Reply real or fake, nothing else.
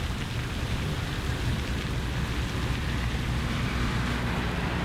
real